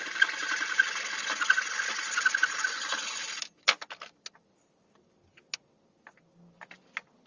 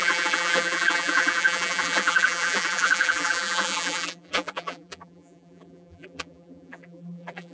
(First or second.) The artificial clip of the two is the second